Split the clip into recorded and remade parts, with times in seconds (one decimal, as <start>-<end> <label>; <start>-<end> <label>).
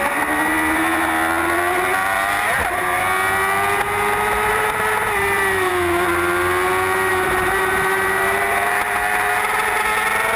0.0-2.0 recorded; 2.0-3.0 remade; 3.0-4.5 recorded; 4.5-5.7 remade; 5.7-7.1 recorded; 7.1-9.8 remade; 9.8-10.4 recorded